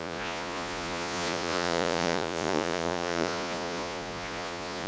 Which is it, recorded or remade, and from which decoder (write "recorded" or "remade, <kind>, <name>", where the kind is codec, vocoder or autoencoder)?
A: remade, vocoder, Vocos